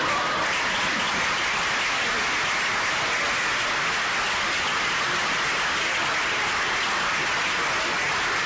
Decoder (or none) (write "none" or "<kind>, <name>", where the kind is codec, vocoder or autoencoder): none